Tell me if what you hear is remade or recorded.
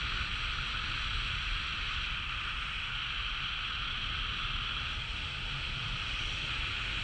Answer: recorded